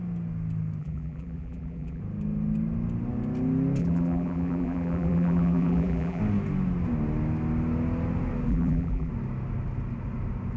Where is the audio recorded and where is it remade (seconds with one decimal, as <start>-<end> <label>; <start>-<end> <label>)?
0.0-0.8 recorded; 0.8-2.0 remade; 2.0-3.8 recorded; 3.8-6.2 remade; 6.2-8.5 recorded; 8.5-9.1 remade; 9.1-10.6 recorded